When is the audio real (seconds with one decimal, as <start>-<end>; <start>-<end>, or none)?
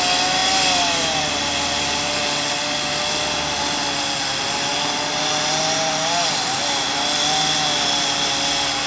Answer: 0.0-8.9